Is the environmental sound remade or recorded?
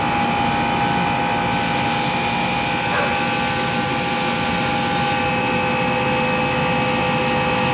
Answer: recorded